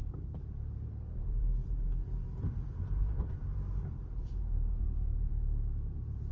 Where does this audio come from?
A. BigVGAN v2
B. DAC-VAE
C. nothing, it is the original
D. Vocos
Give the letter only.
A